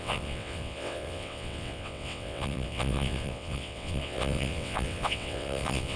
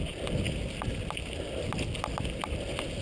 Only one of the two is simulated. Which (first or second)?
first